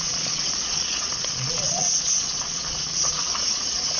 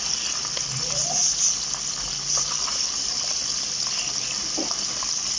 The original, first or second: second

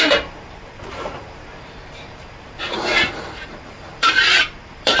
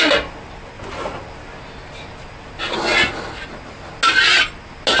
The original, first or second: second